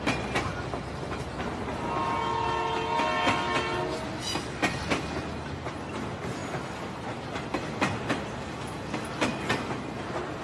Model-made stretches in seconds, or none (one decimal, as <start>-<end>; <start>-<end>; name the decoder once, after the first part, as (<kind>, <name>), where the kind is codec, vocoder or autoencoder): none